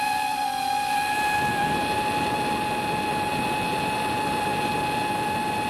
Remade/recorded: recorded